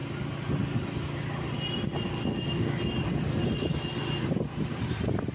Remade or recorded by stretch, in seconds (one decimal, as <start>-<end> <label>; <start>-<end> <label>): 0.0-5.3 recorded